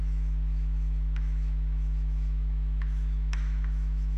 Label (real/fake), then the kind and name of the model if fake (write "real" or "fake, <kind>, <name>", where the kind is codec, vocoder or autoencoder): fake, autoencoder, DAC-VAE